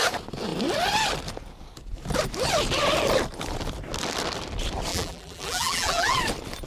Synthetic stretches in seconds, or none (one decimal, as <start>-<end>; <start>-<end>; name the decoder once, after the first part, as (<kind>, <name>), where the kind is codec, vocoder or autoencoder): 4.9-6.2 (vocoder, BigVGAN v2)